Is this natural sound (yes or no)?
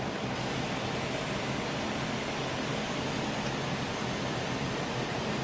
yes